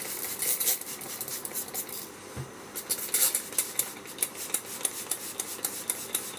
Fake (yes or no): no